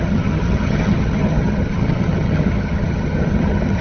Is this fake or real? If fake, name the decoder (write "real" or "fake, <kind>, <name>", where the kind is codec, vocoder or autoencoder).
fake, vocoder, HiFi-GAN